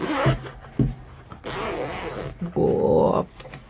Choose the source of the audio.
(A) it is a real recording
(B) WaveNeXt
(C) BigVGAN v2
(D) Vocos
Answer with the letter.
A